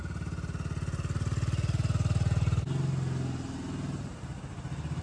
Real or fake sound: real